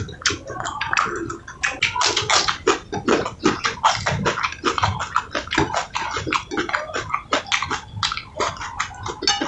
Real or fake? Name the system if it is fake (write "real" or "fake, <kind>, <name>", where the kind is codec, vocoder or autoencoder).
real